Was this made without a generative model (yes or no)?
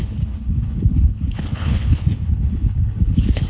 no